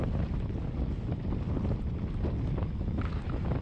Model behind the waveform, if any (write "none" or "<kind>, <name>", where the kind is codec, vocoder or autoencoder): none